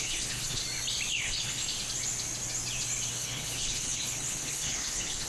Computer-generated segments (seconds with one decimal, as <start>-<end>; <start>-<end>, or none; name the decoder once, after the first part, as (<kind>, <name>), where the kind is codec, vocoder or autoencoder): 0.0-0.6 (codec, HILCodec); 1.1-1.6; 3.1-5.3